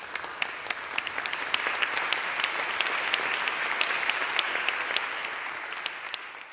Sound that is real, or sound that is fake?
real